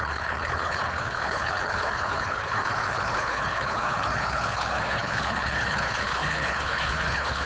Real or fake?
fake